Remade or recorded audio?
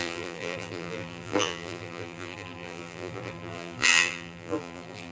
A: remade